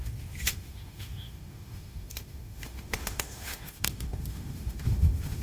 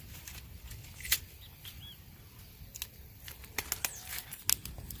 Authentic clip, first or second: second